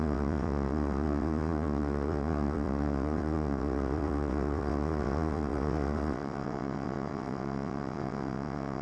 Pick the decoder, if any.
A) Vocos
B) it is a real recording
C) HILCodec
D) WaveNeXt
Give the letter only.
D